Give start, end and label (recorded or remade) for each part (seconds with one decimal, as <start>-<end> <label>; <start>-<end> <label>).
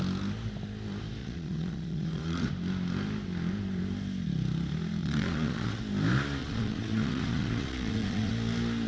0.0-1.2 recorded; 1.2-2.5 remade; 2.5-5.0 recorded; 5.0-5.8 remade; 5.8-6.4 recorded; 6.4-8.3 remade; 8.3-8.9 recorded